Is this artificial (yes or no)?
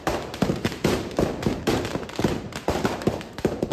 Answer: yes